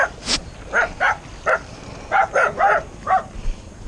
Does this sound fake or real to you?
real